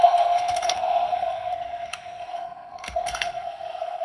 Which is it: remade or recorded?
remade